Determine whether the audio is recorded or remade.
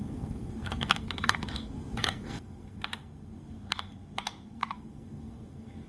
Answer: remade